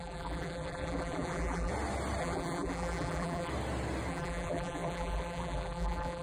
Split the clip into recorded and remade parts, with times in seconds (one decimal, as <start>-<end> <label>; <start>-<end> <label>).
0.0-1.7 remade; 1.7-2.2 recorded; 2.2-3.5 remade; 3.5-4.1 recorded; 4.1-6.2 remade